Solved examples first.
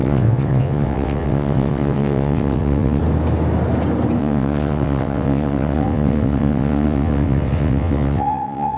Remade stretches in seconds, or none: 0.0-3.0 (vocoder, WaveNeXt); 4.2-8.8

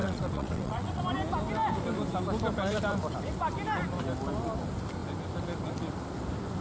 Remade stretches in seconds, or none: 0.0-1.0 (vocoder, WaveNeXt)

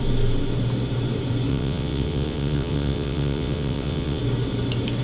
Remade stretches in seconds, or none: 1.5-4.2 (vocoder, WaveNeXt)

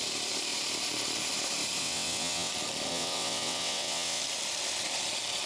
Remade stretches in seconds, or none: 1.8-2.5 (vocoder, WaveNeXt); 2.9-4.2

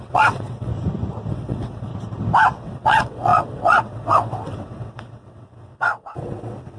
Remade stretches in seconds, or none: 0.0-0.7 (vocoder, WaveNeXt); 1.3-1.9; 2.6-6.8

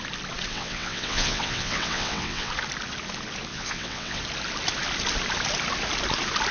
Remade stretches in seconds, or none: 0.5-2.5 (vocoder, WaveNeXt); 3.5-4.2

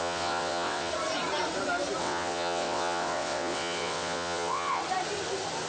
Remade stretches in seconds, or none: 0.0-0.9 (vocoder, WaveNeXt); 2.0-4.8

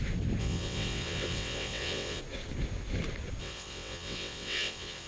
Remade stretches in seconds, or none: 0.4-2.2 (vocoder, WaveNeXt); 3.4-5.1